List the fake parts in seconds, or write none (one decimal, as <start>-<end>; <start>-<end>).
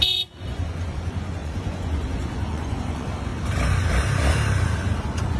0.0-3.3; 5.0-5.4